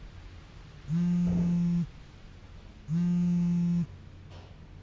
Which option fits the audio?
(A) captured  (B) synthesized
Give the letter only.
A